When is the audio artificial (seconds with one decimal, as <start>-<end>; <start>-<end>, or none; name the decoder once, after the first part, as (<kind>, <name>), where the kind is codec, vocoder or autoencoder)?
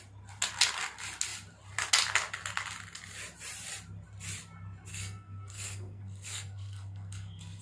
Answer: 4.9-7.6 (codec, SNAC)